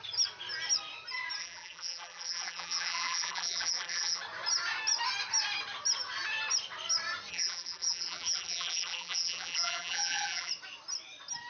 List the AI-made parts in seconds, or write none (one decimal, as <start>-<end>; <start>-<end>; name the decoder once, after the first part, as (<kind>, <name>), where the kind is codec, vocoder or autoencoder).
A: 1.4-4.2 (vocoder, BigVGAN v2); 7.3-10.5

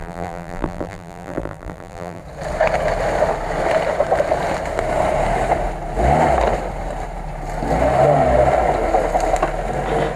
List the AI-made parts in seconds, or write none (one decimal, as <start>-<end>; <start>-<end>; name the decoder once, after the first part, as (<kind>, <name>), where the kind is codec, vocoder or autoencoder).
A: 0.0-2.2 (vocoder, BigVGAN v2)

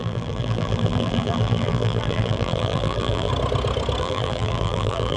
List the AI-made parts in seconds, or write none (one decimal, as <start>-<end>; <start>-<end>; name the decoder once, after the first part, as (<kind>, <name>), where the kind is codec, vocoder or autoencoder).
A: 0.0-3.3 (vocoder, BigVGAN v2); 4.0-5.2

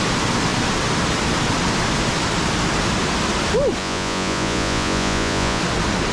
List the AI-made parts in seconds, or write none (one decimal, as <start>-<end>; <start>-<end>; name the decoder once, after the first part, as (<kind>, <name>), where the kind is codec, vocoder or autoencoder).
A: 3.8-5.6 (vocoder, Vocos)

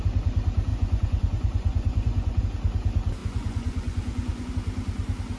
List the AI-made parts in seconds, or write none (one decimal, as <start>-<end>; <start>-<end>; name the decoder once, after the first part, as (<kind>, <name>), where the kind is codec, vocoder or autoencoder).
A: 0.7-2.4 (vocoder, Vocos); 3.2-4.5

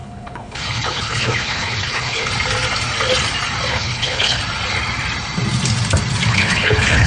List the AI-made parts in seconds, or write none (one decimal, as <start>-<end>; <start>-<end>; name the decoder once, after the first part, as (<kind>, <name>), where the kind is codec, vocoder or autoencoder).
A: 0.0-2.3 (codec, HILCodec); 3.7-4.4; 6.3-7.1

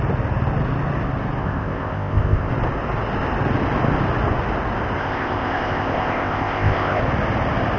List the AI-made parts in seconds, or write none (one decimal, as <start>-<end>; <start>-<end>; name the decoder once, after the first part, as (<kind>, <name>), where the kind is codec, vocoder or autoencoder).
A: 1.4-2.5 (codec, ZipCodec); 5.0-7.0